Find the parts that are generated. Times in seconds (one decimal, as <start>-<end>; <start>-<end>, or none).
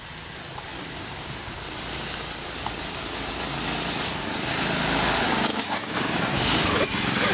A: 5.5-7.3